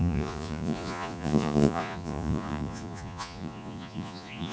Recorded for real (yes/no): no